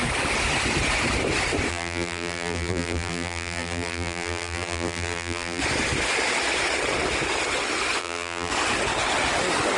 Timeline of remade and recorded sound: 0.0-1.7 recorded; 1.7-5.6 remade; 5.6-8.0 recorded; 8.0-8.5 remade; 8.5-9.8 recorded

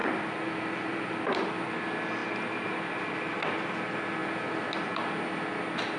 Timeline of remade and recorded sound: 0.0-1.7 remade; 1.7-2.2 recorded; 2.2-3.4 remade; 3.4-6.0 recorded

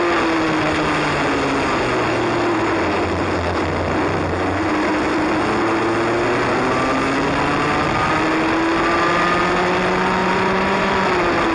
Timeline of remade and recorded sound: 0.0-10.2 recorded; 10.2-10.9 remade; 10.9-11.5 recorded

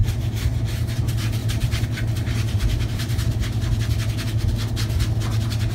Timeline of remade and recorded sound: 0.0-1.0 remade; 1.0-1.4 recorded; 1.4-3.7 remade; 3.7-5.7 recorded

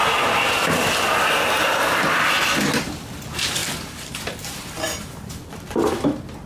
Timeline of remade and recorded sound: 0.0-6.5 remade

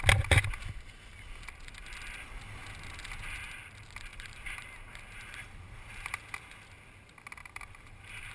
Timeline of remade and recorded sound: 0.0-4.1 recorded; 4.1-6.2 remade; 6.2-7.4 recorded; 7.4-8.3 remade

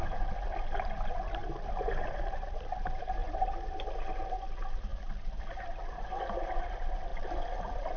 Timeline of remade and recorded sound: 0.0-1.4 recorded; 1.4-2.2 remade; 2.2-3.2 recorded; 3.2-3.8 remade; 3.8-7.1 recorded; 7.1-8.0 remade

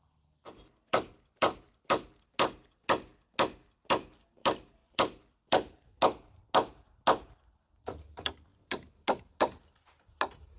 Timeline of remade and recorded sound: 0.0-0.4 recorded; 0.4-1.8 remade; 1.8-4.4 recorded; 4.4-5.9 remade; 5.9-10.6 recorded